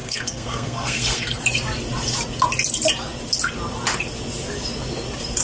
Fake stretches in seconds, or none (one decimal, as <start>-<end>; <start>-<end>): 0.0-1.4